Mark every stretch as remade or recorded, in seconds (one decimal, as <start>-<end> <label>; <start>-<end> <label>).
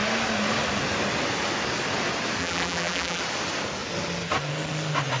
0.0-2.4 recorded; 2.4-3.2 remade; 3.2-5.2 recorded